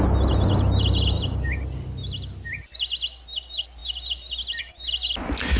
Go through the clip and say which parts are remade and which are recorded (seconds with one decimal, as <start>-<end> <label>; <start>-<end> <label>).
0.0-5.6 recorded